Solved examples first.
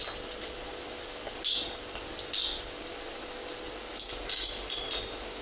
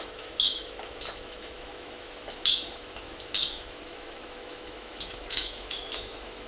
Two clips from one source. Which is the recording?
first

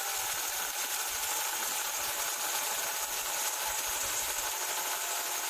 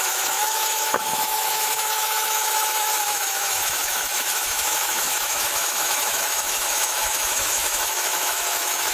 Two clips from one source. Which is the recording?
first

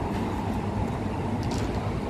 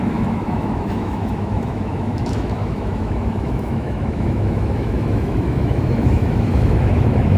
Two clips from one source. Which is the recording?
first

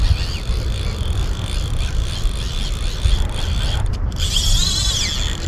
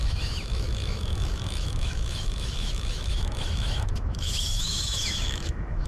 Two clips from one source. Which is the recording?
first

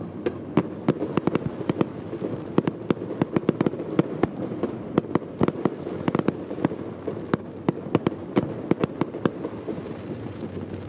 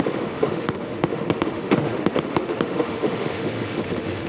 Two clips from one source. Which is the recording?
first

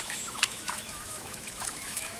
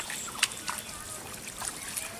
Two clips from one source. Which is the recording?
second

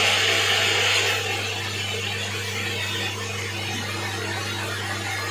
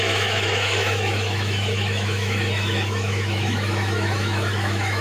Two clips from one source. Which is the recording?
first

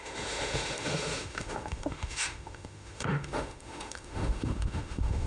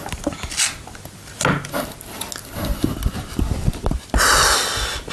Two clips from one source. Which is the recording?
second